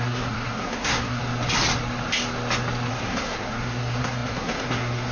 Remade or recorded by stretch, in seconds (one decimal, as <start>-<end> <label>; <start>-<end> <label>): 0.0-1.2 remade; 1.2-2.9 recorded; 2.9-5.1 remade